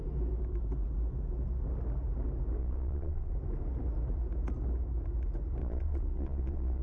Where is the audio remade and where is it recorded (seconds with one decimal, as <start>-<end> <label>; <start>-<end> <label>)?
0.0-2.6 recorded; 2.6-3.3 remade; 3.3-5.6 recorded; 5.6-6.8 remade